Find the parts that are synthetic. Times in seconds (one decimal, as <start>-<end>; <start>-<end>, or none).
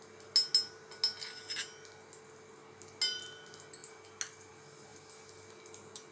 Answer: none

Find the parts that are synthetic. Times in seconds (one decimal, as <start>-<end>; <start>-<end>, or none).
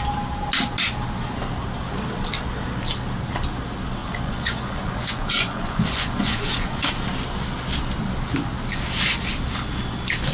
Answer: 4.0-6.9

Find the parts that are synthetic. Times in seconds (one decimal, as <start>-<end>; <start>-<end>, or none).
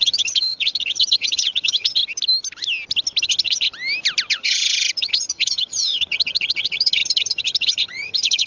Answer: 0.0-2.0; 3.2-3.7; 4.3-8.5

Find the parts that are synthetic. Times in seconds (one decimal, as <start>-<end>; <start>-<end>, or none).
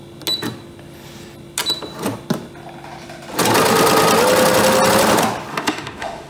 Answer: 5.5-6.3